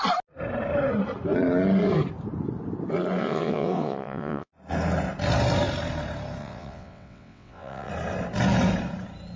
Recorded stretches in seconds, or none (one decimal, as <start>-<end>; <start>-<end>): 0.0-3.2; 4.5-6.4; 7.9-9.4